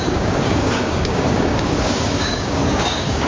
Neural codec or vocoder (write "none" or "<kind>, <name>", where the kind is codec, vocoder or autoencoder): codec, DAC